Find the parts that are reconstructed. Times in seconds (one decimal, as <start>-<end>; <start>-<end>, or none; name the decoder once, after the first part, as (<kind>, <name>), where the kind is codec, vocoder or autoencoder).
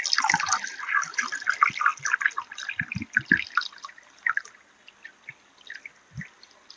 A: none